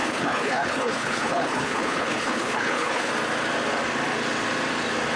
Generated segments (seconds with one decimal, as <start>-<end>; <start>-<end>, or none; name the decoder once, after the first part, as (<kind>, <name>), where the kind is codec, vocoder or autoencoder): 0.0-3.1 (codec, HILCodec)